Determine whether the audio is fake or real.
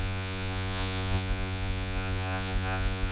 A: fake